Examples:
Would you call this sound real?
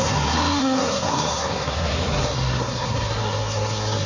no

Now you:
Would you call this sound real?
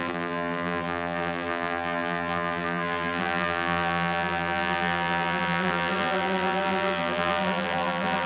no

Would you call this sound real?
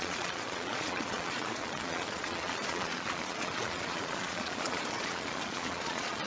no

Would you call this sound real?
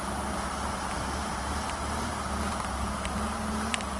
no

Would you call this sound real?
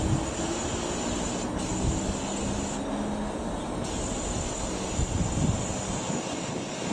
yes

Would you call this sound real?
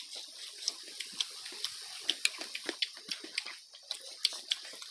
yes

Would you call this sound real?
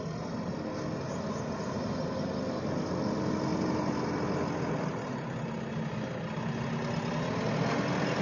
yes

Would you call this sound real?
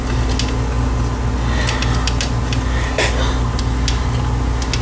yes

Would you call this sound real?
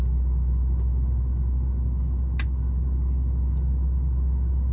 yes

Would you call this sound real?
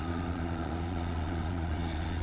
no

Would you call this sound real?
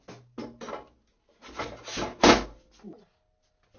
yes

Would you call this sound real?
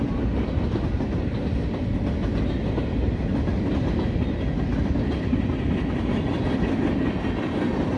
yes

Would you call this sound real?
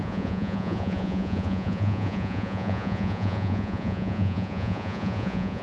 no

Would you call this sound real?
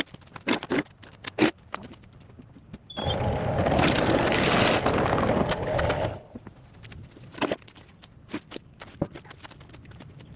no